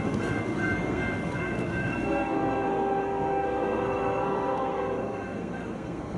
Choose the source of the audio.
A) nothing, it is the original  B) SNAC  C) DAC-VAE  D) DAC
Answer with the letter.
B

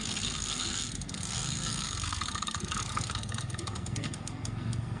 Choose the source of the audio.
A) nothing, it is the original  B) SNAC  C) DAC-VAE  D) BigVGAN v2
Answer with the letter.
B